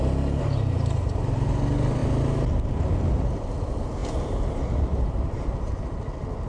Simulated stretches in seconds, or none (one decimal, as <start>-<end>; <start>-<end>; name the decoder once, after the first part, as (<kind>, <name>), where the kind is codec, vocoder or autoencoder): 0.0-1.1 (vocoder, BigVGAN v2)